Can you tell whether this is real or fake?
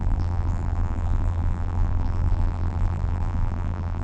fake